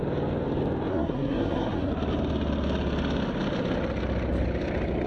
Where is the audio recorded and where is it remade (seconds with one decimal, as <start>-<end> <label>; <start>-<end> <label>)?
0.0-0.9 recorded; 0.9-1.9 remade; 1.9-5.1 recorded